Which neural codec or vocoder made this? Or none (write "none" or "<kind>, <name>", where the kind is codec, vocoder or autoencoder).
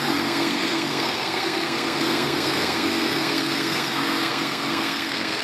codec, SNAC